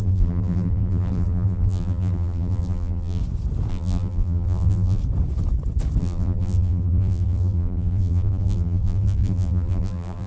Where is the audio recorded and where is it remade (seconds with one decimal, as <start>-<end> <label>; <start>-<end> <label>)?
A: 0.0-3.2 remade; 3.2-3.7 recorded; 3.7-5.0 remade; 5.0-6.0 recorded; 6.0-10.3 remade